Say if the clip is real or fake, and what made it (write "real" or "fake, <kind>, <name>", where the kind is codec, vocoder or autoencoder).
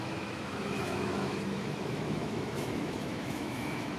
fake, autoencoder, DAC-VAE